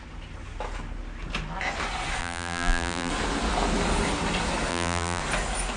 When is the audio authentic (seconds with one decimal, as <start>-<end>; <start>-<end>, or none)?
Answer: 0.0-2.2; 3.1-4.7; 5.2-5.8